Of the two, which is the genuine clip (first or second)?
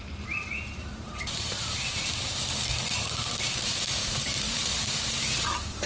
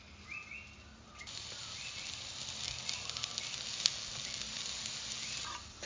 second